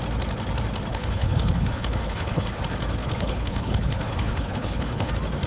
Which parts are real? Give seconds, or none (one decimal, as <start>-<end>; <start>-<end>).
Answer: 0.0-0.9; 2.6-3.0; 5.1-5.5